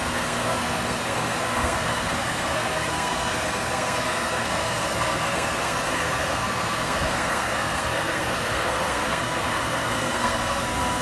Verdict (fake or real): fake